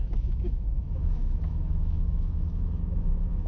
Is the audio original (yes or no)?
no